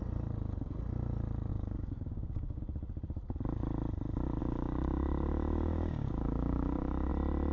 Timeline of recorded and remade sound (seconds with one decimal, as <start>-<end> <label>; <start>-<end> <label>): 0.0-1.5 recorded; 1.5-2.6 remade; 2.6-4.4 recorded; 4.4-7.1 remade; 7.1-7.5 recorded